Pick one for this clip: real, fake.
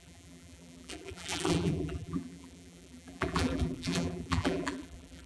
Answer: fake